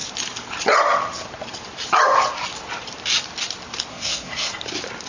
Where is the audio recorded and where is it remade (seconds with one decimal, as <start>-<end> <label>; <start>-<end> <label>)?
0.0-3.9 recorded; 3.9-4.5 remade; 4.5-5.1 recorded

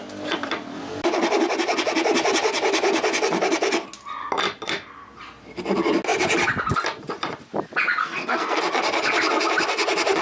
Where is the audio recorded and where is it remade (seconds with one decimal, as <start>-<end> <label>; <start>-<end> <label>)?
0.0-8.0 recorded; 8.0-8.6 remade; 8.6-10.2 recorded

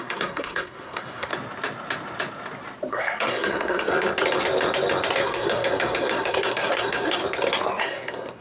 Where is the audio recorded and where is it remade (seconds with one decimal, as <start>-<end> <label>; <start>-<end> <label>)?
0.0-1.3 remade; 1.3-2.9 recorded; 2.9-3.9 remade; 3.9-5.1 recorded; 5.1-7.2 remade; 7.2-7.8 recorded; 7.8-8.4 remade